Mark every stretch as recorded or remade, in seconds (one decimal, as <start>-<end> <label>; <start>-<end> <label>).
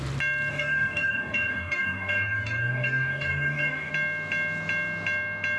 0.0-0.5 recorded; 0.5-3.9 remade; 3.9-5.6 recorded